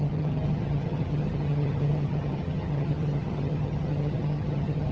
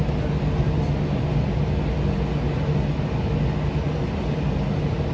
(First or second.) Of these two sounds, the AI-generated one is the first